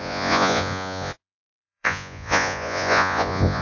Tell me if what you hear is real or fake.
fake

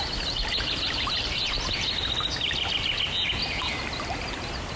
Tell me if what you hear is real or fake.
real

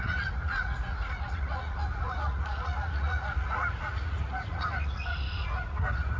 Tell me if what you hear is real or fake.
fake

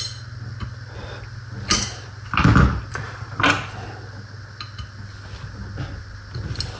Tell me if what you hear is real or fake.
real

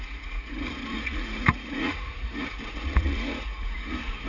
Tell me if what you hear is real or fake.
fake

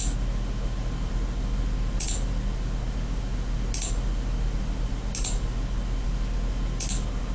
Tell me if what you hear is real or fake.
real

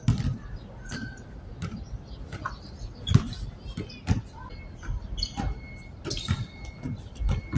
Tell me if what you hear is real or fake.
real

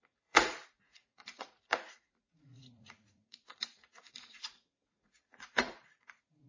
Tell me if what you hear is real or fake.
fake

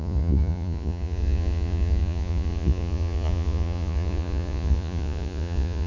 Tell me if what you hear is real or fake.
fake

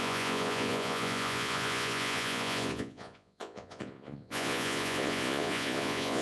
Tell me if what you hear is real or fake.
fake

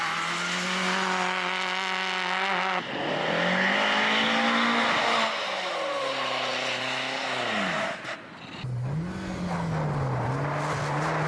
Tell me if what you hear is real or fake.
real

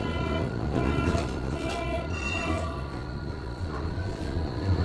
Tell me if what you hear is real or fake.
fake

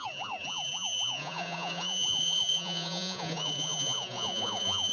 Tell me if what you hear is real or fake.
fake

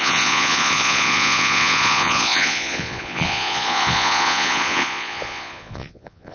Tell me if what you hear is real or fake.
fake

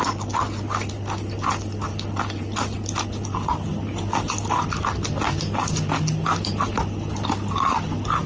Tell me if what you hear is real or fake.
real